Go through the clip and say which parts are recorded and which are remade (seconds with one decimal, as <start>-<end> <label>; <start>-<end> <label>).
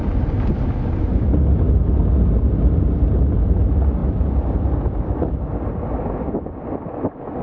0.0-7.4 recorded